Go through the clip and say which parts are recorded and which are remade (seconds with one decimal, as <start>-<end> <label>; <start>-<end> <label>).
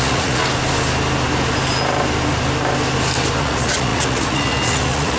0.0-0.4 remade; 0.4-3.4 recorded; 3.4-5.2 remade